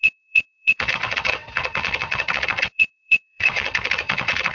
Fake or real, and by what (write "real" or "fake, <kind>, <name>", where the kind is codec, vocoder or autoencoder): fake, vocoder, WaveNeXt